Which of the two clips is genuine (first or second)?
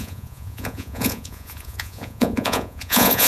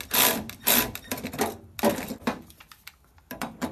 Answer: second